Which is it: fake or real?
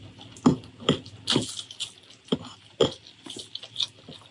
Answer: real